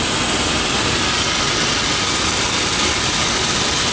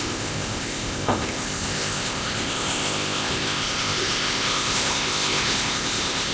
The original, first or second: first